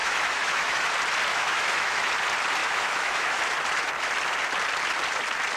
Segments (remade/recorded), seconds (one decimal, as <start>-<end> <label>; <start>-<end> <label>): 0.0-0.9 remade; 0.9-1.3 recorded; 1.3-2.1 remade; 2.1-2.6 recorded; 2.6-3.4 remade; 3.4-5.6 recorded